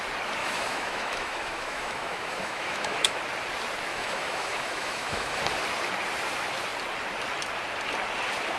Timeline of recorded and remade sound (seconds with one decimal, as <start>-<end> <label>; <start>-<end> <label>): 0.0-0.4 recorded; 0.4-3.2 remade; 3.2-3.9 recorded; 3.9-5.4 remade; 5.4-8.6 recorded